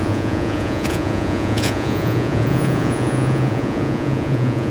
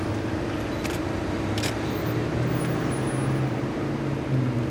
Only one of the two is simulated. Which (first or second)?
first